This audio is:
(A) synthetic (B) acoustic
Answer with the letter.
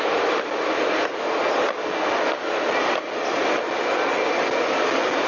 B